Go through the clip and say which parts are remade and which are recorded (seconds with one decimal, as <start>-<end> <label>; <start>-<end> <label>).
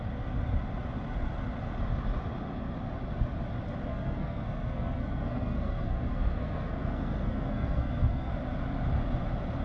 0.0-3.9 recorded; 3.9-8.3 remade; 8.3-9.6 recorded